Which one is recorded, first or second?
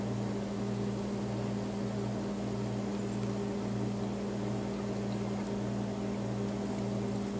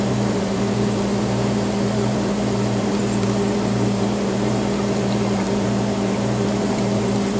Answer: first